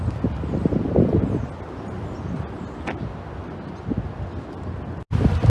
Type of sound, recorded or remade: recorded